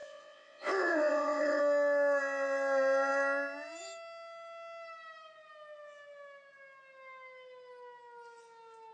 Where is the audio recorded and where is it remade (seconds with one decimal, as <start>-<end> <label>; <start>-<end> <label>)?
0.0-1.6 remade; 1.6-8.9 recorded